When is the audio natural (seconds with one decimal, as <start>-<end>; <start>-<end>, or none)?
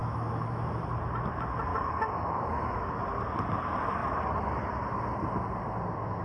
0.8-1.7; 2.9-6.2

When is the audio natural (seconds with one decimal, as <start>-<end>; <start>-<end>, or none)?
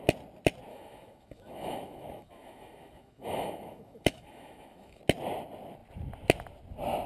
0.0-0.7; 5.0-7.1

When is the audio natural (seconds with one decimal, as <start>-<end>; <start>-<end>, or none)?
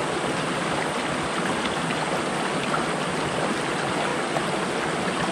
0.0-5.3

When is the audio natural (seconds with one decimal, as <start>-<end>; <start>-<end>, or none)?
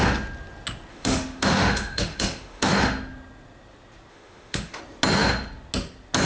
0.0-0.9; 2.7-4.1; 4.8-6.3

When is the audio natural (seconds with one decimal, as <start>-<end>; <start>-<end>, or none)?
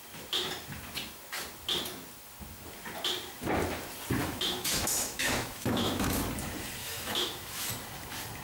0.0-4.2; 6.2-6.8; 7.7-8.4